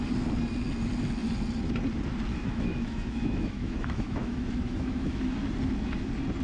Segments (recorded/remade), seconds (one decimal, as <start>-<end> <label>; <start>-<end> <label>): 0.0-2.3 recorded; 2.3-5.2 remade; 5.2-6.4 recorded